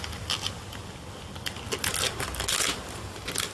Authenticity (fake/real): real